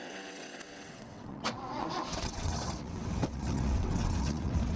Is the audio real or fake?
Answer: fake